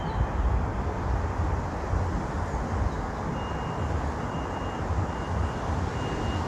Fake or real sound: real